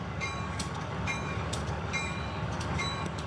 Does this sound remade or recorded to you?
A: remade